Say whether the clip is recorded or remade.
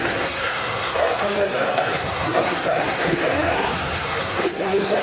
remade